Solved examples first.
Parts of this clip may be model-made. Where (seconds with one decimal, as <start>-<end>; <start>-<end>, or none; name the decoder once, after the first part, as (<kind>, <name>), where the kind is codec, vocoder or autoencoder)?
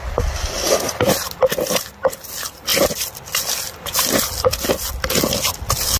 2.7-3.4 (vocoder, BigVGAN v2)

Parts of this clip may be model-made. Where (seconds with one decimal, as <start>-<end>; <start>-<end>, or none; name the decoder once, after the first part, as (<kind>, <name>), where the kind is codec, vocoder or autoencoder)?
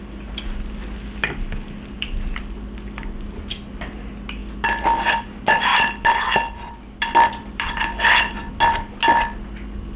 5.7-8.5 (vocoder, BigVGAN v2)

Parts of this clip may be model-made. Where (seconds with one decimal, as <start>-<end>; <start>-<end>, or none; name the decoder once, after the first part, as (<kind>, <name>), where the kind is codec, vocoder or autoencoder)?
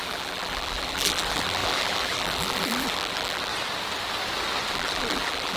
0.0-3.5 (vocoder, BigVGAN v2); 4.7-5.6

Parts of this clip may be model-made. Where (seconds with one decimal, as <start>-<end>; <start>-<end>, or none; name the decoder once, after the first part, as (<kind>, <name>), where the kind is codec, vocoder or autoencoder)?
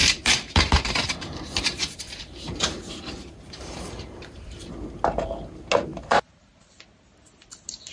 0.0-4.7 (vocoder, BigVGAN v2); 5.9-6.6